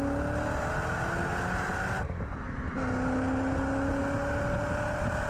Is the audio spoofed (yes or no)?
no